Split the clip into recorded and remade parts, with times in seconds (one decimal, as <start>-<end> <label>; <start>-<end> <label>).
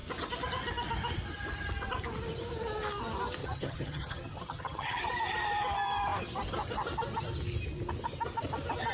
0.0-3.4 recorded; 3.4-5.0 remade; 5.0-8.9 recorded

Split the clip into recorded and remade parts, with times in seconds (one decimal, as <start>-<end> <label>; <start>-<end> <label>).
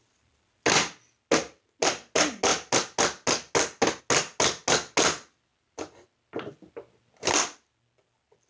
0.0-8.5 recorded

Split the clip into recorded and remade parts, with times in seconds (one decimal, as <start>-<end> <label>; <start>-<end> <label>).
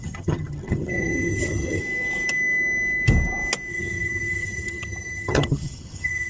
0.0-1.8 remade; 1.8-3.7 recorded; 3.7-6.3 remade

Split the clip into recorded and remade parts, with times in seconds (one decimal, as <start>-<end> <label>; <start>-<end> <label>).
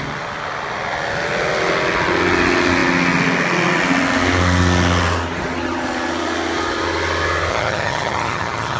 0.0-7.5 recorded; 7.5-8.8 remade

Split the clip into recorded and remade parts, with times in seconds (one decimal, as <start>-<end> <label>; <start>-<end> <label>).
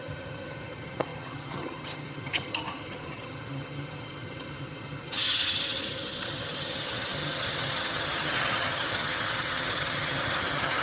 0.0-10.8 remade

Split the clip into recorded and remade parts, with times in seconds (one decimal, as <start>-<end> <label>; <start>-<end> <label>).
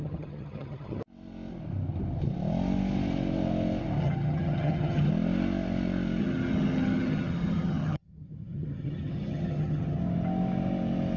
0.0-1.0 remade; 1.0-4.0 recorded; 4.0-5.1 remade; 5.1-6.2 recorded; 6.2-10.0 remade; 10.0-11.2 recorded